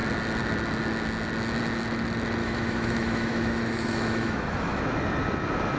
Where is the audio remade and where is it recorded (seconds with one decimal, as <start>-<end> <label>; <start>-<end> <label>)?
0.0-2.4 recorded; 2.4-4.8 remade; 4.8-5.8 recorded